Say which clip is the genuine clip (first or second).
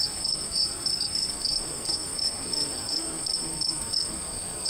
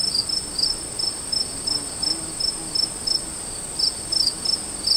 second